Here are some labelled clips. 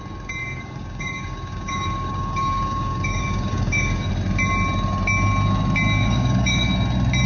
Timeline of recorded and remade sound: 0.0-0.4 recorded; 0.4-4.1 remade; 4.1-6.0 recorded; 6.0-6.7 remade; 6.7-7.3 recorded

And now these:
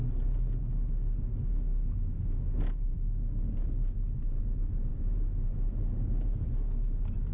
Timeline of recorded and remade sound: 0.0-7.3 recorded

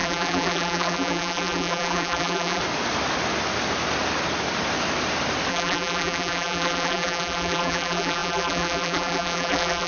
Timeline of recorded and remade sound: 0.0-2.6 remade; 2.6-5.5 recorded; 5.5-9.9 remade

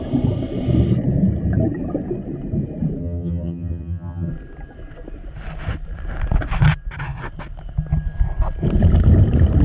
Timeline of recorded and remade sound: 0.0-3.0 recorded; 3.0-4.3 remade; 4.3-9.6 recorded

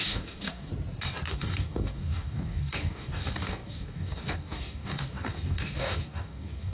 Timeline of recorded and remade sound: 0.0-0.7 remade; 0.7-1.3 recorded; 1.3-6.7 remade

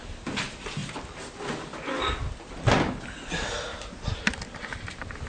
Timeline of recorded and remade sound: 0.0-5.3 recorded

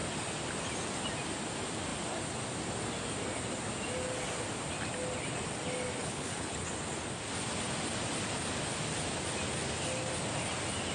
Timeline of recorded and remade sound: 0.0-6.0 recorded; 6.0-6.7 remade; 6.7-10.9 recorded

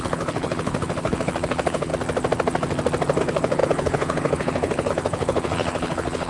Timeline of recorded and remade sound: 0.0-1.9 remade; 1.9-3.2 recorded; 3.2-6.3 remade